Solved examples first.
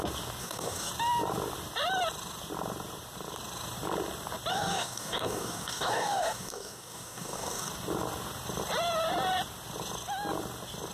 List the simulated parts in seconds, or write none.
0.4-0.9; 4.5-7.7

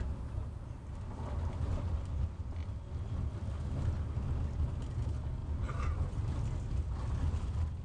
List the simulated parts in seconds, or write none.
none

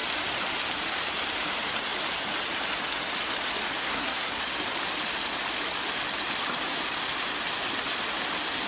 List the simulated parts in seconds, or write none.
3.8-4.4